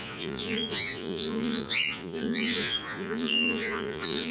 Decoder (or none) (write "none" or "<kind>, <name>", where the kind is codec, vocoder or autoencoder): vocoder, Vocos